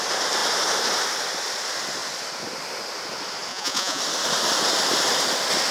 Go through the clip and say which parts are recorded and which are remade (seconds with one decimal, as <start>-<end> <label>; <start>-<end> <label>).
0.0-3.5 recorded; 3.5-4.0 remade; 4.0-5.7 recorded